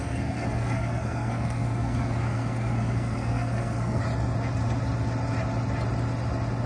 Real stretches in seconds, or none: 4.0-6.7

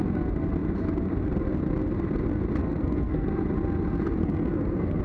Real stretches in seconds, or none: 0.0-2.6; 3.3-4.2

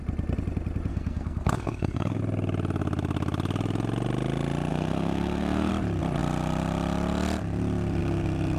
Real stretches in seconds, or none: 0.0-0.9; 2.2-4.7; 5.7-8.6

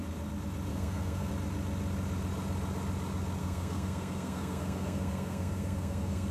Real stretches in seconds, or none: 0.0-0.7; 1.3-3.4

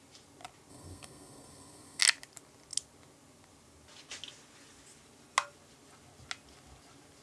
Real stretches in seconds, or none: 0.0-0.7; 2.0-7.2

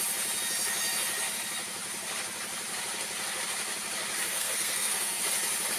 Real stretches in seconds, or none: 0.0-4.3; 5.2-5.8

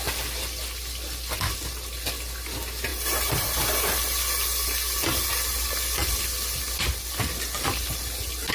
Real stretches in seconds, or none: 0.0-8.5